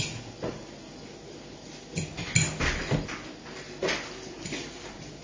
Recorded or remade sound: recorded